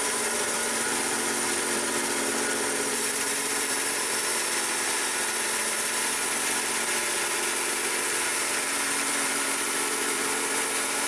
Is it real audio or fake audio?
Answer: fake